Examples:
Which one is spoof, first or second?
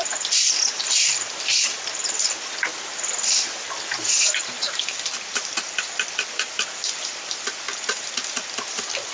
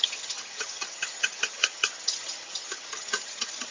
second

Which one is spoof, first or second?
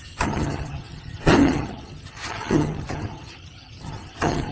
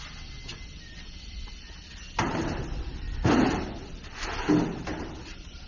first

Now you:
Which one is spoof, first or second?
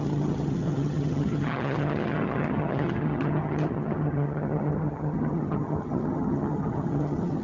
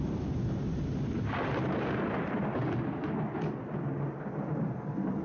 first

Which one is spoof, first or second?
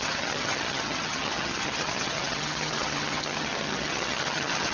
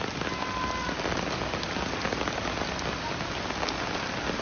first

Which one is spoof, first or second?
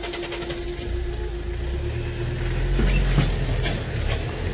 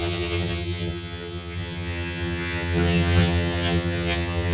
second